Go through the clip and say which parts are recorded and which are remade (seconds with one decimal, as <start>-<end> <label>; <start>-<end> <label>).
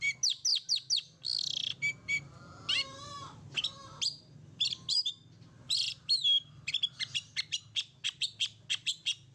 0.0-9.3 recorded